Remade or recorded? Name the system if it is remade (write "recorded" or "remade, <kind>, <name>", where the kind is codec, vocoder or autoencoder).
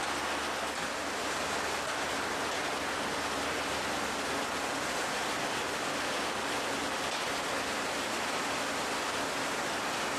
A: recorded